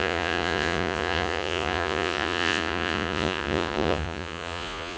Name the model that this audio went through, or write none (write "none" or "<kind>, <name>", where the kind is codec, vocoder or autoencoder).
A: vocoder, Vocos